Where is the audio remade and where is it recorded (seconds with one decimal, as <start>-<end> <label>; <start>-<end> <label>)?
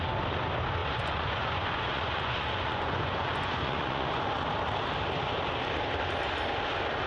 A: 0.0-0.8 recorded; 0.8-4.2 remade; 4.2-7.1 recorded